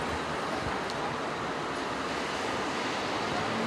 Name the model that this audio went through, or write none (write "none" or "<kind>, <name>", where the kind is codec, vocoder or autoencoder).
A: none